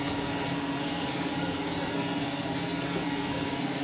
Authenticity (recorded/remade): remade